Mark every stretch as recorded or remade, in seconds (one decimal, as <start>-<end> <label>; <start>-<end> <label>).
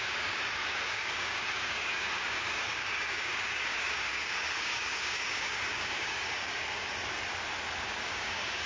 0.0-7.0 remade; 7.0-7.8 recorded; 7.8-8.7 remade